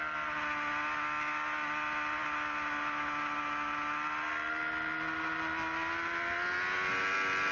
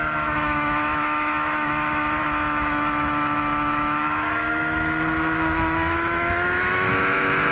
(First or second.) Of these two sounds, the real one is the first